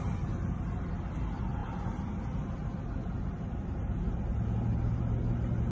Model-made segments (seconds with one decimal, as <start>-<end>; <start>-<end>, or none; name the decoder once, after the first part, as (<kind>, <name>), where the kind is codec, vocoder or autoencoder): none